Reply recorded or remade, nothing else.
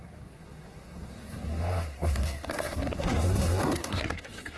remade